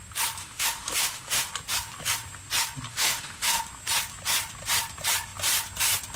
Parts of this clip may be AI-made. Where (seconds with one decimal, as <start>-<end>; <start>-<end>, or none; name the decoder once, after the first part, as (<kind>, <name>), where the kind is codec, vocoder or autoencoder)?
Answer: 0.4-1.5 (autoencoder, DAC-VAE); 2.9-3.6